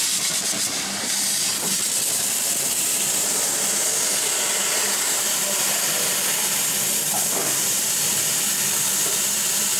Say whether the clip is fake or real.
fake